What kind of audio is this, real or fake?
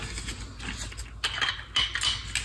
real